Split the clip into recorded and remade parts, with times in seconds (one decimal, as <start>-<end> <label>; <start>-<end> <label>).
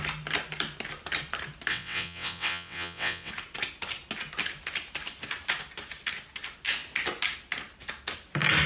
0.0-1.7 recorded; 1.7-3.3 remade; 3.3-8.7 recorded